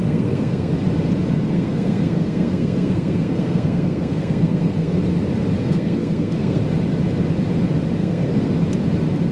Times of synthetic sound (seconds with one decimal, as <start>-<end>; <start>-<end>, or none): 0.0-0.7; 1.3-5.0; 5.6-6.6; 8.0-8.5